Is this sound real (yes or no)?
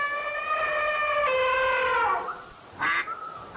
yes